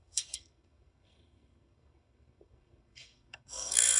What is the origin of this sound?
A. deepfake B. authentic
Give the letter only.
A